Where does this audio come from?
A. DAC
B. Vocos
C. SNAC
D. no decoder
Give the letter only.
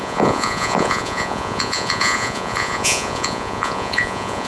B